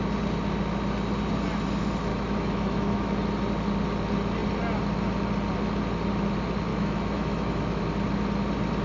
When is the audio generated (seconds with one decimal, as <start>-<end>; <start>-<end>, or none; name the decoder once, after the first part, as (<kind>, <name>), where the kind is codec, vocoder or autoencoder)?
2.1-3.1 (autoencoder, DAC-VAE); 6.7-7.8